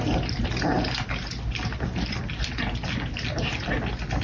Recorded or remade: recorded